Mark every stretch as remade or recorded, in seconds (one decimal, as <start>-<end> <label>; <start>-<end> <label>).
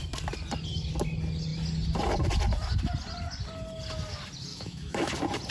0.0-4.5 recorded; 4.5-5.1 remade; 5.1-5.5 recorded